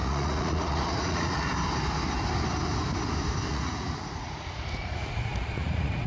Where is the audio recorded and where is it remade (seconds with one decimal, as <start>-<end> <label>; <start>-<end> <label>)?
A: 0.0-1.5 remade; 1.5-3.5 recorded; 3.5-6.1 remade